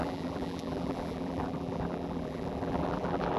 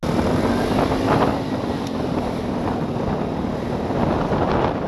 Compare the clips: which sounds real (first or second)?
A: second